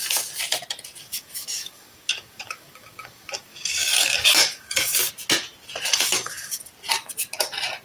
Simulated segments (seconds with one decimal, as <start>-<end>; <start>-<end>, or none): 1.0-5.1; 5.9-6.7